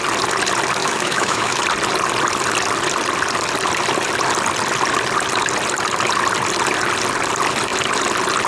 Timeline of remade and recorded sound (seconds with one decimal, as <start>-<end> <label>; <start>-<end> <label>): 0.0-0.8 recorded; 0.8-1.6 remade; 1.6-8.5 recorded